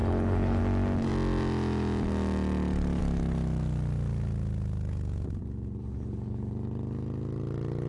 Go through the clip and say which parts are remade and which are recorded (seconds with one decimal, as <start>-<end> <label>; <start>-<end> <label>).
0.0-0.6 remade; 0.6-5.8 recorded; 5.8-6.5 remade; 6.5-7.9 recorded